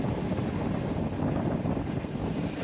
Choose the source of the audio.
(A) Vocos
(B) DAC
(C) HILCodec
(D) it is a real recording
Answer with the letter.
D